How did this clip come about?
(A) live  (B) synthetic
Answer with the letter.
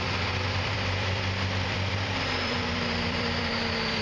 B